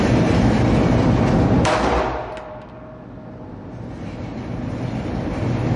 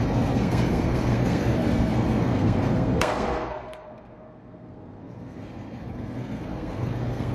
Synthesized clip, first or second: second